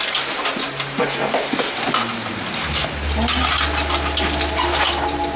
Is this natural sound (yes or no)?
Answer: yes